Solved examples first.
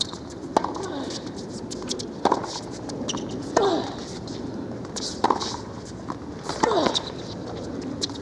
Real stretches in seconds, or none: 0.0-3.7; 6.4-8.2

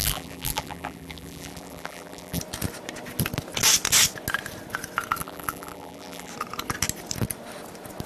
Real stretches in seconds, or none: 2.4-5.2; 6.3-8.1

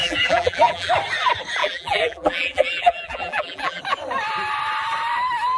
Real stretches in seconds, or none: 0.9-1.6; 3.8-5.6

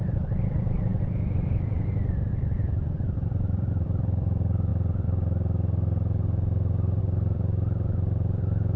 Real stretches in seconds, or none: 4.7-7.0

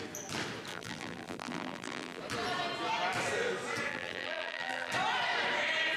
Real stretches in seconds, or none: 0.0-0.7; 2.2-3.9; 4.9-6.0

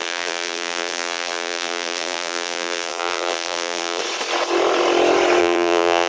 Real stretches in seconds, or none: 4.0-5.4

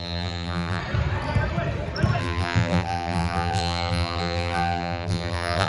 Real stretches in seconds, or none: 0.8-2.2

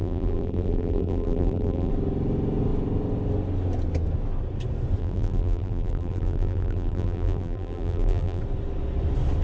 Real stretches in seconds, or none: 1.9-5.0; 8.4-9.4